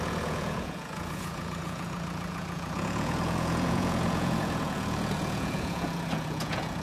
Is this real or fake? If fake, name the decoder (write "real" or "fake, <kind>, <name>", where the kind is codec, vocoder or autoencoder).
fake, vocoder, Vocos